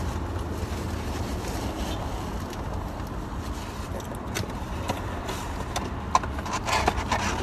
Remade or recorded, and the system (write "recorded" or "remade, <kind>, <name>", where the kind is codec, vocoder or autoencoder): recorded